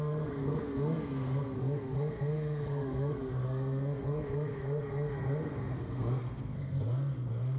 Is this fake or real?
fake